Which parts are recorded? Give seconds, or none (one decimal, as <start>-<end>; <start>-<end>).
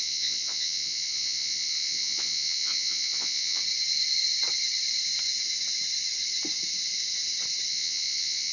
3.6-7.7